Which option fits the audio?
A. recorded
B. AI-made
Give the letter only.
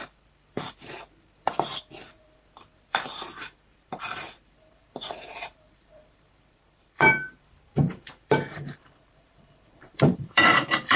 B